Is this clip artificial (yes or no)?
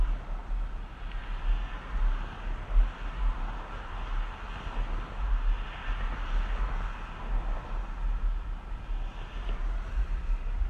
no